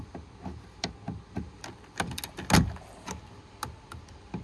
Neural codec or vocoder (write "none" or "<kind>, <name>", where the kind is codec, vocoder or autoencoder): none